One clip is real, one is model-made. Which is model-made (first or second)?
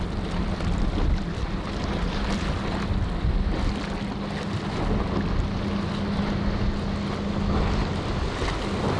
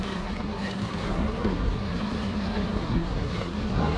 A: second